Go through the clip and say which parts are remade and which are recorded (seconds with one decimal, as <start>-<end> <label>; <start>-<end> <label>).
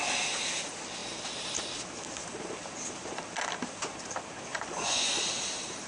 0.0-4.5 recorded; 4.5-5.2 remade; 5.2-5.9 recorded